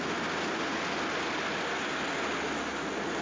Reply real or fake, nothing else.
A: real